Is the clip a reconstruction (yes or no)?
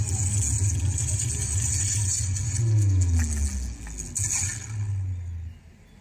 no